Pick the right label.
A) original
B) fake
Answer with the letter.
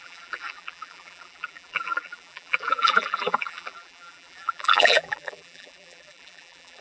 B